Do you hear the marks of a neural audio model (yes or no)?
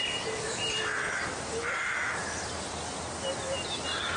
no